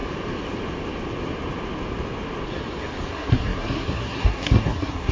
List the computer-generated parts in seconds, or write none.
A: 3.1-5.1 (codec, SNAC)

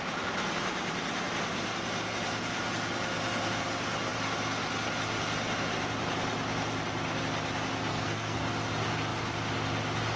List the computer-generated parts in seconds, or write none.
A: 7.9-8.5 (codec, SNAC)

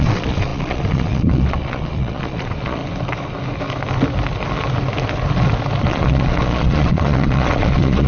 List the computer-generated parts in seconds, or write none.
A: 0.0-2.8 (vocoder, Vocos); 5.8-8.1

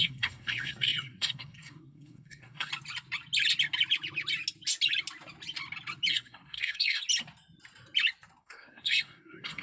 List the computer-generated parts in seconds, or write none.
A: 0.0-2.7 (codec, SNAC); 6.1-7.0; 8.4-9.6

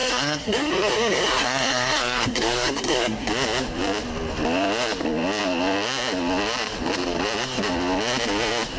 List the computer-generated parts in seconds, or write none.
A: 0.0-3.3 (codec, SNAC)

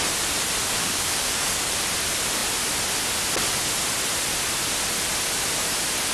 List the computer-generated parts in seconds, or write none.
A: 0.8-1.7 (codec, DAC)